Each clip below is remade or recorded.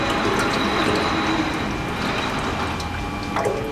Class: recorded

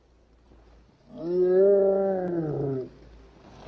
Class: recorded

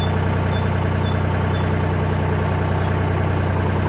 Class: recorded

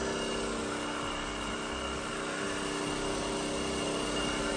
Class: recorded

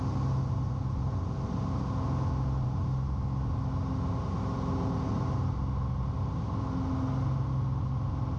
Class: recorded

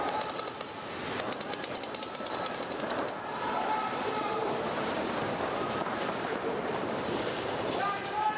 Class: remade